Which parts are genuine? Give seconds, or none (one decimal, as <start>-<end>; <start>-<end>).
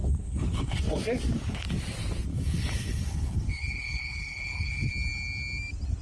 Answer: 0.8-2.3; 4.9-6.0